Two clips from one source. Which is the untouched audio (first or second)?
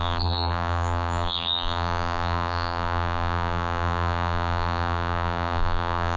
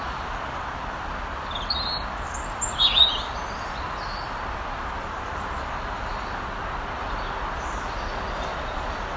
second